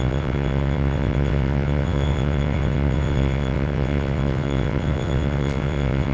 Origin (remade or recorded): remade